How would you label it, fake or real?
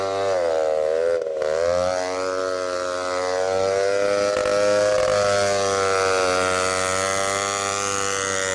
real